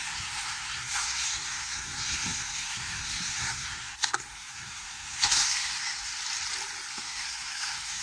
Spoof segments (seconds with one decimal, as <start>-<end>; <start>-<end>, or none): 0.0-6.1; 6.9-8.0